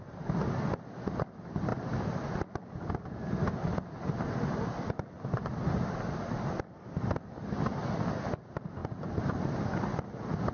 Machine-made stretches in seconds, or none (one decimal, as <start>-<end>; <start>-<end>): none